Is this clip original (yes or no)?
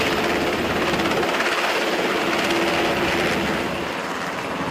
yes